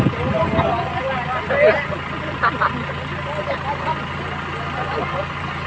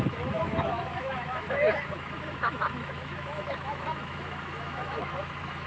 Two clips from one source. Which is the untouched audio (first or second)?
first